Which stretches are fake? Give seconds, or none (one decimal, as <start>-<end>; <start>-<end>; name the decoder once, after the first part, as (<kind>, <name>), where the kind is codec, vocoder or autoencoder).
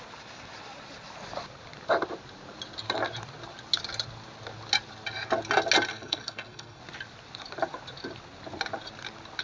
5.9-6.8 (codec, SNAC)